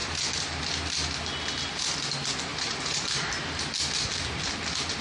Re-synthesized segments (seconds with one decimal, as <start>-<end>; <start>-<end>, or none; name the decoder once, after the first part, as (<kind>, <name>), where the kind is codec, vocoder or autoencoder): 0.0-0.6 (vocoder, BigVGAN v2); 2.5-3.8